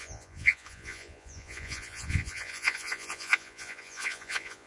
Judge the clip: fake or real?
fake